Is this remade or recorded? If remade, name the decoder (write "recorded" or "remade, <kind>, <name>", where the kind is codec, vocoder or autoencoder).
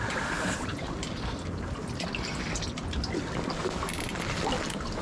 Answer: recorded